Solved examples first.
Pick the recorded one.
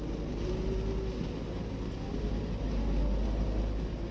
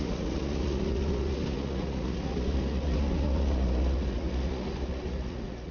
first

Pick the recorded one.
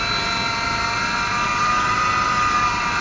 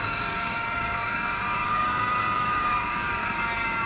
first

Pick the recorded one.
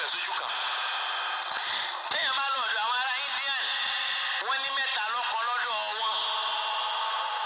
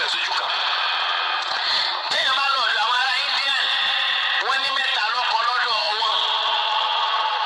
first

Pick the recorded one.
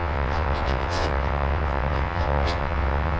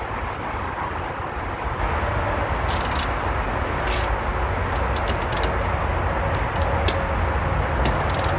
second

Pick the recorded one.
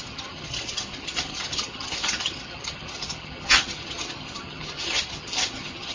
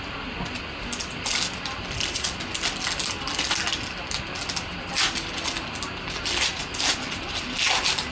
second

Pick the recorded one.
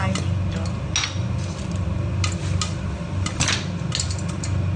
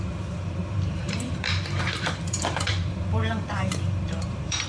first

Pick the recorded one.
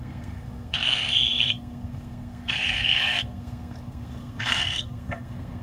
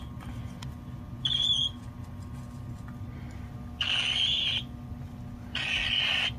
second